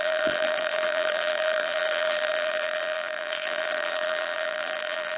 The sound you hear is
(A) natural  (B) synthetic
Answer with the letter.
B